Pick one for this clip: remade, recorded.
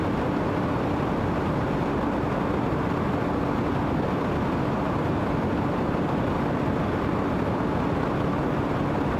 recorded